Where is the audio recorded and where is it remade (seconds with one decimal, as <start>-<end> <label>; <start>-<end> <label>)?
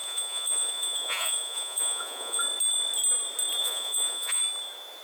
0.0-2.4 remade; 2.4-3.6 recorded; 3.6-4.4 remade; 4.4-5.0 recorded